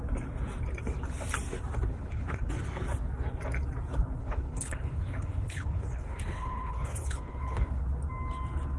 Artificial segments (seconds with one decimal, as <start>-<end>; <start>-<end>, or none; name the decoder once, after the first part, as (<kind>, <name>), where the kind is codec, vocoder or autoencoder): 1.9-2.5 (codec, HILCodec); 4.2-7.8